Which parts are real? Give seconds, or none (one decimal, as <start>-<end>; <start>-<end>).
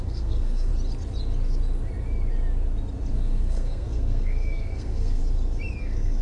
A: 0.7-3.1; 5.2-5.8